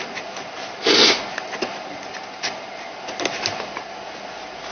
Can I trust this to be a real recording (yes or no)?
yes